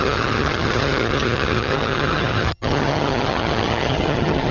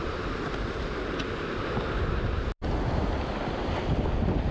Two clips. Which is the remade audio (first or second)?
first